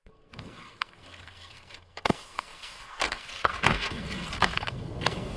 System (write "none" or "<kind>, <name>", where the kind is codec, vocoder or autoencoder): codec, SNAC